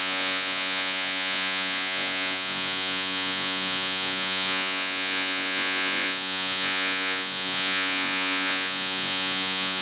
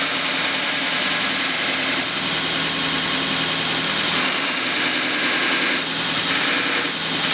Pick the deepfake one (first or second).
first